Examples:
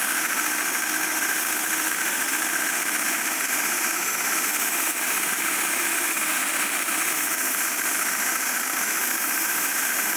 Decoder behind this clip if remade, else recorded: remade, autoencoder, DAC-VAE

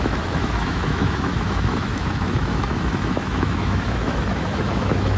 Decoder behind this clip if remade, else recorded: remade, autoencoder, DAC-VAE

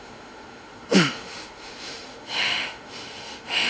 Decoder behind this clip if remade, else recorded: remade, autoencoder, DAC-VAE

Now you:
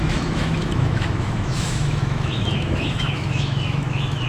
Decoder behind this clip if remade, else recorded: remade, autoencoder, DAC-VAE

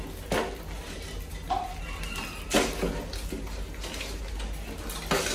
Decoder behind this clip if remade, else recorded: recorded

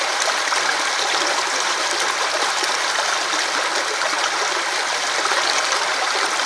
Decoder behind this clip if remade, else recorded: recorded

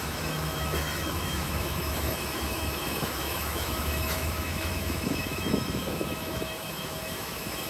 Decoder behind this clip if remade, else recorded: remade, autoencoder, DAC-VAE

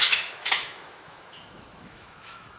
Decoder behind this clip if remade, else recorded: remade, autoencoder, DAC-VAE